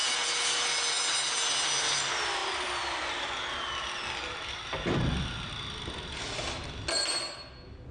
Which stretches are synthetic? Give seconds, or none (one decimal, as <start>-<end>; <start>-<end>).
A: none